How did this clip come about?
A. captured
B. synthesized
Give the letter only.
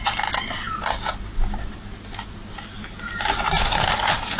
A